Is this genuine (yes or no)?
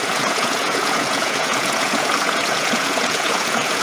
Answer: no